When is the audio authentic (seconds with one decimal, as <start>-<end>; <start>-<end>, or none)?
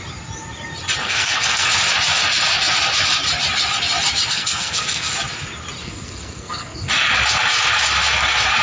0.0-1.0; 1.7-4.3; 5.1-5.8; 6.9-8.6